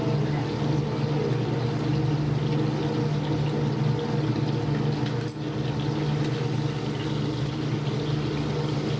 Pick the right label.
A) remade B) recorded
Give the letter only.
B